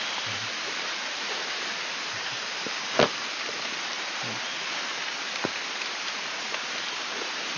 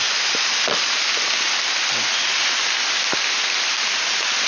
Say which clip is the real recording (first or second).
second